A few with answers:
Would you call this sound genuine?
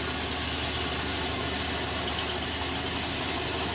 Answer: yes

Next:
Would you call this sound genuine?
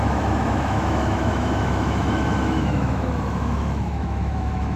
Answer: no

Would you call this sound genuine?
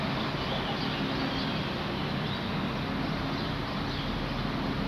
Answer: yes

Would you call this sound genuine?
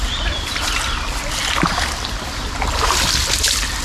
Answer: yes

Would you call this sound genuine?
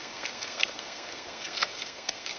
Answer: no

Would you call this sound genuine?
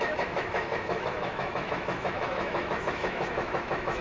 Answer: no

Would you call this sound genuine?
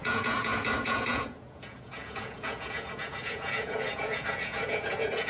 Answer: no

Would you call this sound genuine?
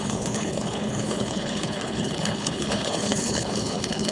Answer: no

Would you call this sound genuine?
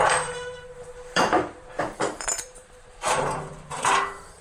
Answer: no